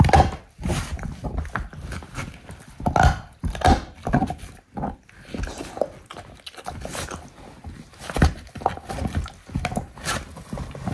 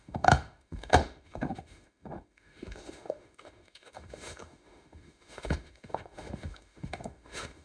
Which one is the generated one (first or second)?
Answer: second